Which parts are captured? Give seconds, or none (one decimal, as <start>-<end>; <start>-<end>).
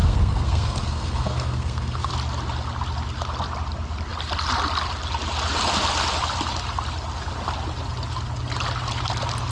2.1-9.5